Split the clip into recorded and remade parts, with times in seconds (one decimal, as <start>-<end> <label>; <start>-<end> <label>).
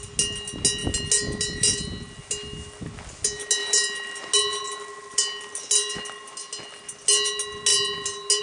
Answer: 0.0-8.4 recorded